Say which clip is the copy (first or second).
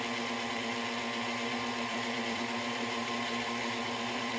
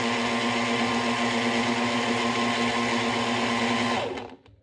first